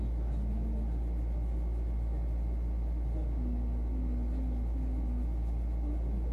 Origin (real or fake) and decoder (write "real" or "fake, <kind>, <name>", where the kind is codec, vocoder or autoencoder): real